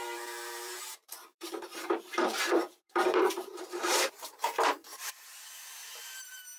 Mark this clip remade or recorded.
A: remade